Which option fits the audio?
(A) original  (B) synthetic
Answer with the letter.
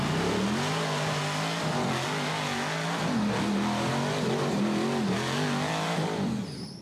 A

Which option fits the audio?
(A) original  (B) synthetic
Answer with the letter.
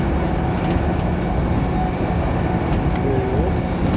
A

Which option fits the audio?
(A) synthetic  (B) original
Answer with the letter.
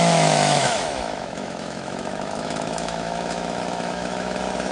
A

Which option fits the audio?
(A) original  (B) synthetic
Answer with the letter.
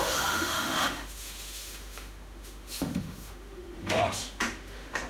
B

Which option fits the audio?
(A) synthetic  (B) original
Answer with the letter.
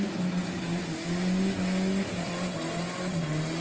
B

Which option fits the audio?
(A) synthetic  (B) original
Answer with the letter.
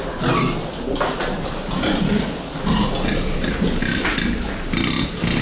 B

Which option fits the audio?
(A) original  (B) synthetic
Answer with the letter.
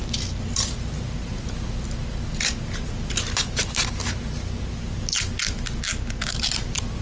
A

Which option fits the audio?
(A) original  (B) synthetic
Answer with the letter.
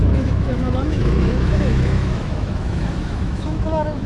B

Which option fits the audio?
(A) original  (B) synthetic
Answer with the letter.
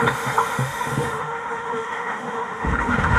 B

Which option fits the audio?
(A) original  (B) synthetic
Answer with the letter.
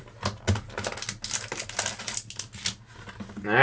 A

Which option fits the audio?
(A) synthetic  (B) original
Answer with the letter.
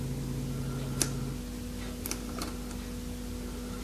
B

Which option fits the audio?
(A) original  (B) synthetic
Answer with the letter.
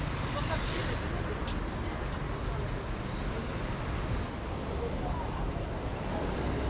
A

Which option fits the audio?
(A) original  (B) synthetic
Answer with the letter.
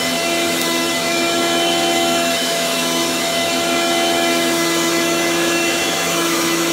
B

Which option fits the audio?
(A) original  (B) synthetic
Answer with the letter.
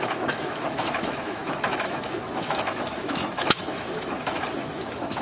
B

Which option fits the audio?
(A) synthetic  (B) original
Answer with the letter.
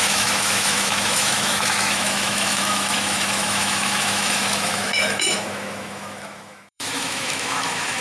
A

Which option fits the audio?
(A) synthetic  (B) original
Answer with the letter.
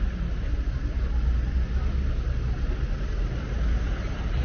B